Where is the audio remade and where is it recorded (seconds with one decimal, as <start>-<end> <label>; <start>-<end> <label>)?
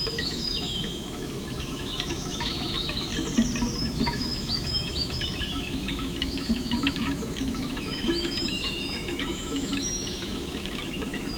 0.0-3.1 remade; 3.1-3.8 recorded; 3.8-11.4 remade